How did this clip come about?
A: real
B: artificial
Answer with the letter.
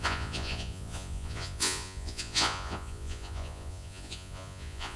B